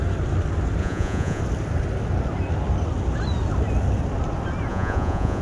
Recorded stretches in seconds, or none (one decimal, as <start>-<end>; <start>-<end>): 0.0-0.8; 1.4-4.7